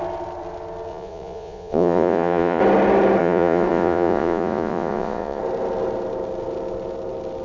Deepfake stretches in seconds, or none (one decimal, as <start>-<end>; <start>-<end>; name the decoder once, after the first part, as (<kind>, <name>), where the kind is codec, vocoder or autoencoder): 0.9-2.6 (vocoder, Vocos); 3.2-5.4